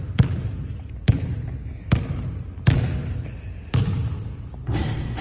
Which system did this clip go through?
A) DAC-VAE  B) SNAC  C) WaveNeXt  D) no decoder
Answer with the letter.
D